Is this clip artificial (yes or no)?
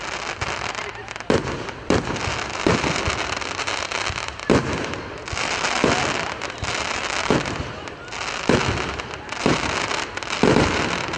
no